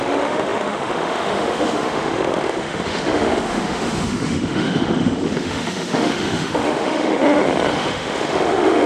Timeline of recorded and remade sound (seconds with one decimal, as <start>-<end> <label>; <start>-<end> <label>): 0.0-7.2 remade; 7.2-7.7 recorded; 7.7-8.9 remade